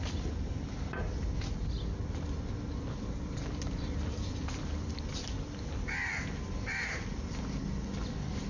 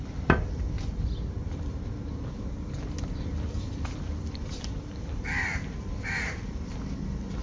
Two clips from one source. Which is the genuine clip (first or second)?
first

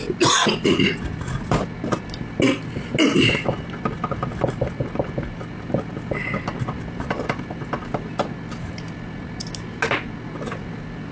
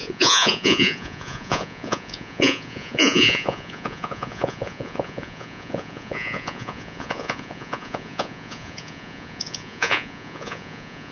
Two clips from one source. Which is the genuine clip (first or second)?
first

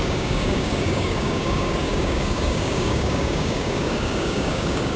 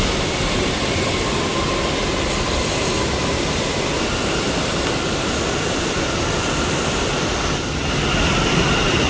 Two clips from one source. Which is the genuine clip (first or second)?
second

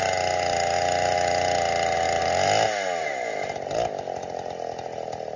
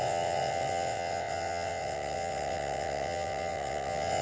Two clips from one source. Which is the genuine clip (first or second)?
first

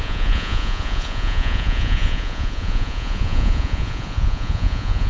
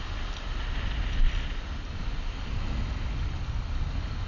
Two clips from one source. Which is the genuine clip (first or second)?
second